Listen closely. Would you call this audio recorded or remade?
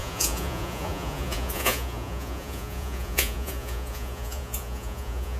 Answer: remade